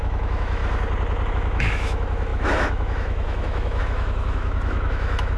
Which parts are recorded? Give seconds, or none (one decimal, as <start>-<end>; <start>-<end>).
0.6-1.3